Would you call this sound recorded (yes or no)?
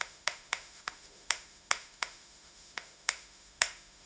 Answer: no